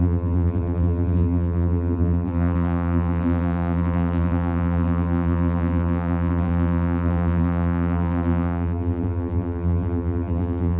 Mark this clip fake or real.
fake